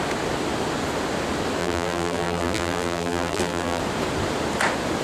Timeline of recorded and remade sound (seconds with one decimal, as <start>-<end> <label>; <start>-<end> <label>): 0.0-1.6 recorded; 1.6-3.8 remade; 3.8-5.0 recorded